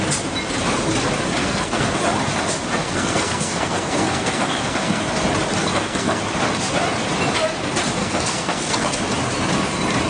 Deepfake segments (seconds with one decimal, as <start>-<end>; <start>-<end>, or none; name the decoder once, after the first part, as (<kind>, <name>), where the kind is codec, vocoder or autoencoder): 1.4-2.0 (codec, SNAC); 2.8-5.0; 5.6-6.2; 8.0-9.0